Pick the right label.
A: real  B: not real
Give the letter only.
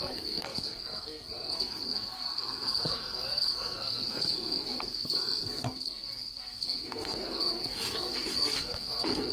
B